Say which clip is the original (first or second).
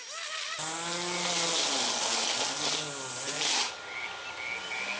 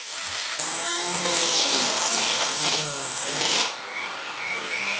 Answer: first